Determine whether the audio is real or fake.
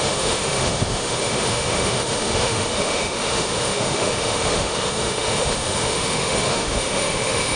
fake